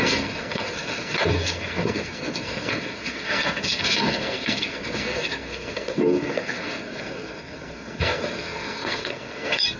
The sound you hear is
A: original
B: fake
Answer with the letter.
B